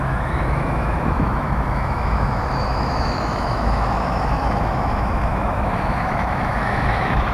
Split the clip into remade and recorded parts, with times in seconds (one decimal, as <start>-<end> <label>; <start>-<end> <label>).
0.0-7.3 remade